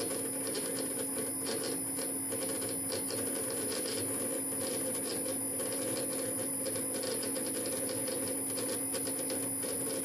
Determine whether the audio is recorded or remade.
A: recorded